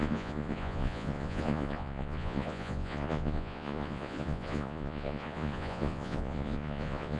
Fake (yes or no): yes